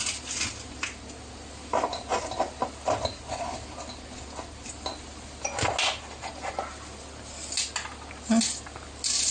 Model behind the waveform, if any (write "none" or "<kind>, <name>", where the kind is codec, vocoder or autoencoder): none